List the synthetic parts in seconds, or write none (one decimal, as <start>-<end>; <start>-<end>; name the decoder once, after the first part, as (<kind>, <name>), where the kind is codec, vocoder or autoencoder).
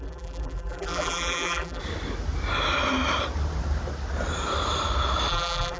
0.0-1.8 (vocoder, BigVGAN v2); 5.3-5.8